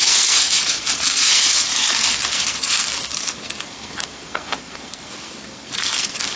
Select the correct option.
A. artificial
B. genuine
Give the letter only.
A